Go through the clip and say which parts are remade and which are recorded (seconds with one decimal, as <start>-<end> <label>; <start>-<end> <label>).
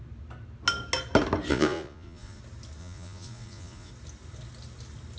0.0-1.5 recorded; 1.5-2.4 remade; 2.4-2.8 recorded; 2.8-3.9 remade; 3.9-5.2 recorded